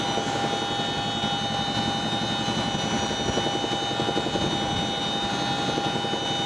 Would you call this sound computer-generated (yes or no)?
no